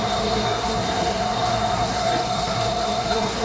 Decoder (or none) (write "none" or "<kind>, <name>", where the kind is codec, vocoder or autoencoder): codec, SNAC